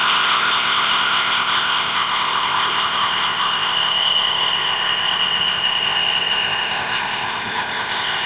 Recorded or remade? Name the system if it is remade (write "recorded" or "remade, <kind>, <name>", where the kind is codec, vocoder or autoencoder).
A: remade, codec, ZipCodec